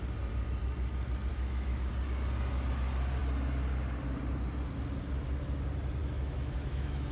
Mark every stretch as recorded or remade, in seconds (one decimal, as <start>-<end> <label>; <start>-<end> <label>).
0.0-1.3 recorded; 1.3-1.9 remade; 1.9-6.0 recorded; 6.0-7.1 remade